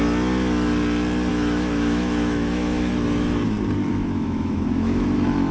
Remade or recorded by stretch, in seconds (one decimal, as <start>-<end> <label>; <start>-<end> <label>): 0.0-1.3 recorded; 1.3-2.9 remade; 2.9-3.9 recorded; 3.9-5.5 remade